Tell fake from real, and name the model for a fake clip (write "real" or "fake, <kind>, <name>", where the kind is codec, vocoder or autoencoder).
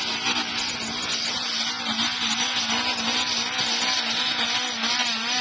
real